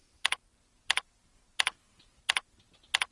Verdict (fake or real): real